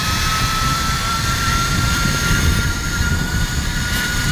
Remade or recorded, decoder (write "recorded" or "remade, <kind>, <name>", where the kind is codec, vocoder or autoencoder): remade, vocoder, BigVGAN v2